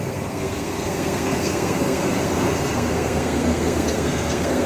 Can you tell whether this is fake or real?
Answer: fake